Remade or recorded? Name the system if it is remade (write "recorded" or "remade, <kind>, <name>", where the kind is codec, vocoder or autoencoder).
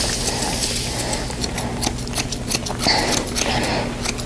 recorded